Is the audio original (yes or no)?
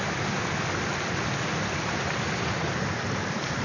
yes